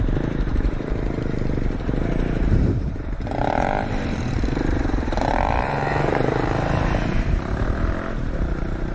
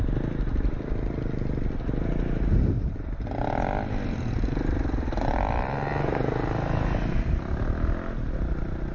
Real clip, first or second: second